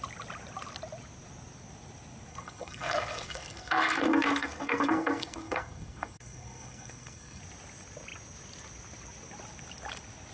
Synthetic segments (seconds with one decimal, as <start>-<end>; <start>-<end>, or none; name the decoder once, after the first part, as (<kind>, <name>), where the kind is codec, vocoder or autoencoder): 2.3-7.4 (codec, SNAC)

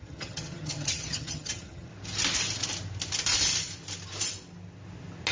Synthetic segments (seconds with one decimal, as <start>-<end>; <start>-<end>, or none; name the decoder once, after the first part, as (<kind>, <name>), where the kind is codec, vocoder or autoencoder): 0.0-1.9 (vocoder, HiFi-GAN)

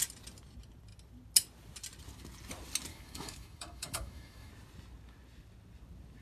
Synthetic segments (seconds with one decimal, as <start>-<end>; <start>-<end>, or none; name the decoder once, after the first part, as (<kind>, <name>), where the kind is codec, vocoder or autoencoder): 2.9-4.5 (autoencoder, DAC-VAE)

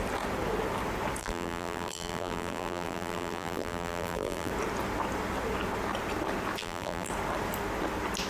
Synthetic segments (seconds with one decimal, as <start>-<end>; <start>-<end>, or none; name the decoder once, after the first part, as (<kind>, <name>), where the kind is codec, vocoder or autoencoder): 1.2-4.5 (vocoder, BigVGAN v2); 6.6-7.1

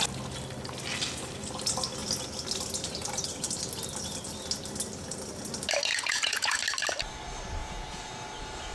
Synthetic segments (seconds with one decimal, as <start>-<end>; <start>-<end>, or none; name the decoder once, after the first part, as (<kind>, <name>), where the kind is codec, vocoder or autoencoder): 5.9-6.6 (vocoder, Vocos); 7.6-8.1

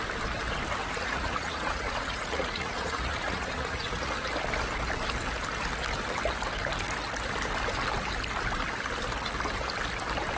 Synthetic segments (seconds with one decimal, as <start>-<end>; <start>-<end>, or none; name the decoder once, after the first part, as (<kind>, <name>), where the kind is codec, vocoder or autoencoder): 0.8-4.1 (vocoder, Vocos)